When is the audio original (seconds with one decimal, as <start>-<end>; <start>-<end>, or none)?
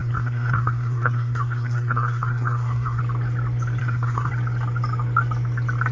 3.0-3.8; 4.3-5.9